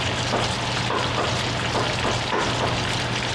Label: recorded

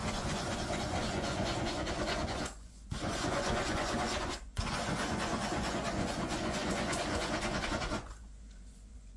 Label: remade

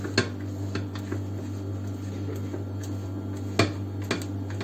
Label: recorded